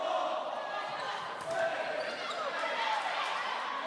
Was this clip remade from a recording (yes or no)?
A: no